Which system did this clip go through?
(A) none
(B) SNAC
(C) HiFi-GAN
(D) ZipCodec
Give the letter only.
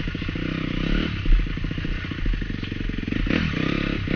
A